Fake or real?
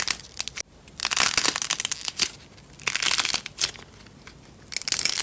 real